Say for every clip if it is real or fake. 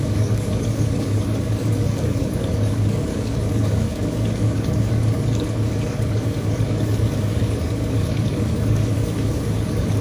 fake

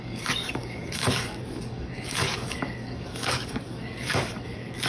fake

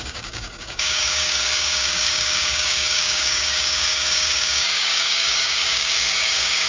fake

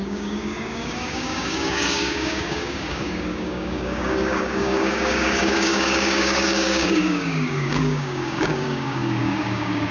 fake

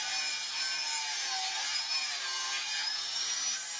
real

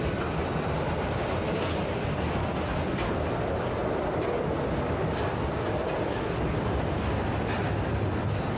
real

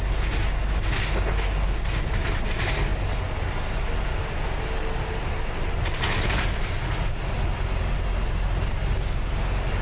real